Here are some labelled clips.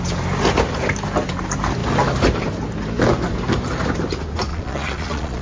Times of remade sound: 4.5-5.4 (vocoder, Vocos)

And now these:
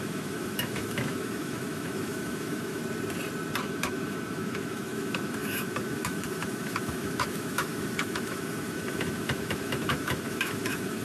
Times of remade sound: 0.0-2.8 (autoencoder, DAC-VAE); 3.6-11.0

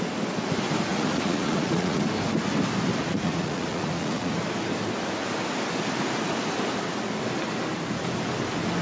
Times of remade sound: 0.9-2.0 (vocoder, Vocos); 3.0-4.3

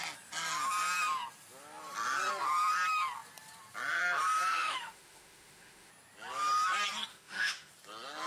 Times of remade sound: 4.5-5.9 (autoencoder, DAC-VAE); 7.1-7.7

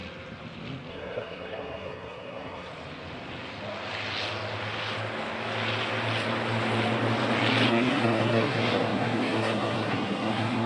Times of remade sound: 0.9-2.7 (codec, SNAC); 7.7-10.7

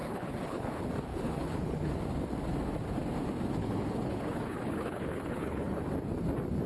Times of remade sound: 0.0-0.7 (codec, HILCodec); 1.1-1.9; 3.6-5.8

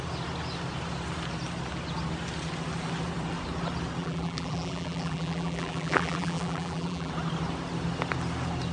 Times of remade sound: 4.0-7.1 (vocoder, BigVGAN v2)

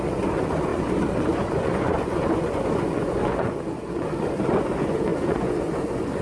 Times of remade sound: 0.0-6.2 (vocoder, Vocos)